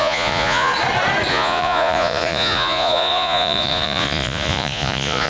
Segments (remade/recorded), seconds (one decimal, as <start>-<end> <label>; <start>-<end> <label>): 0.0-0.7 remade; 0.7-1.3 recorded; 1.3-5.3 remade